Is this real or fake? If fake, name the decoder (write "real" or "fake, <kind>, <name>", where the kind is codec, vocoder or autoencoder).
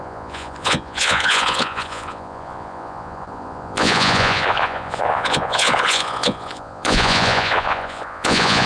fake, vocoder, Vocos